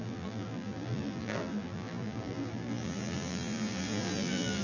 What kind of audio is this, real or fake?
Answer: fake